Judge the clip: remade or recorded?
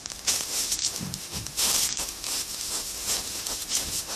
remade